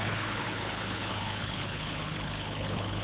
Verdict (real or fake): fake